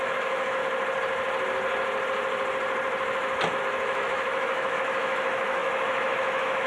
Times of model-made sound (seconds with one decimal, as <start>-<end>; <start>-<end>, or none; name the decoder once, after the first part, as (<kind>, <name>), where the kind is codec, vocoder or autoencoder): 0.0-0.6 (autoencoder, DAC-VAE); 3.6-6.7